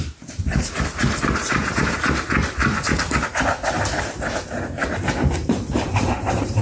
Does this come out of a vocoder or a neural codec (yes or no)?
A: yes